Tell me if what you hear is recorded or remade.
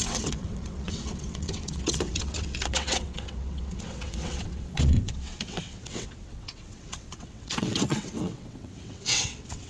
remade